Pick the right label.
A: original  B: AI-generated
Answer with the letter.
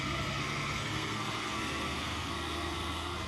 B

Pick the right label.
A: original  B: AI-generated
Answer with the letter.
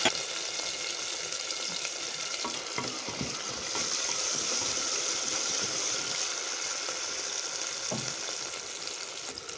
A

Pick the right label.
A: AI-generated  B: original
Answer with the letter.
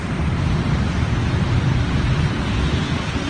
B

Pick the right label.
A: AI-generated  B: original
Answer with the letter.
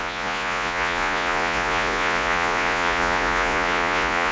A